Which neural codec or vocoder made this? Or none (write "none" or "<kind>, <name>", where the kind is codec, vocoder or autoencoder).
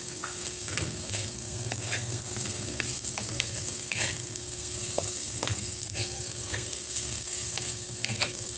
codec, SNAC